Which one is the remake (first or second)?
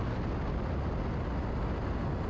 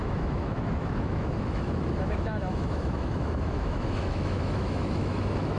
second